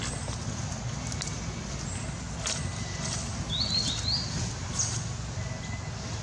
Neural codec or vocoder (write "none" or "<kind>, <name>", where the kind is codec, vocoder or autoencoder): none